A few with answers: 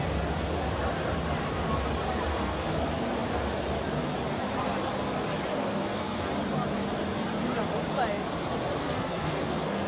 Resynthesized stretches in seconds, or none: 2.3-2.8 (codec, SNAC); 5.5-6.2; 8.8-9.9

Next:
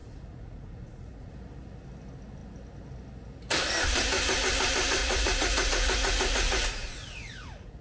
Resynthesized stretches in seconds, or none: 0.0-1.3 (vocoder, Vocos); 5.0-7.8

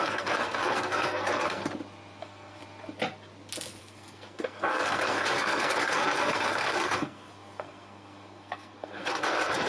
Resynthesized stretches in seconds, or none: 0.0-1.6 (codec, SNAC); 2.2-2.6; 3.8-9.7

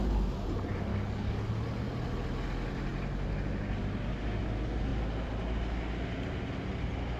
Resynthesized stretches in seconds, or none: 0.9-1.5 (codec, DAC)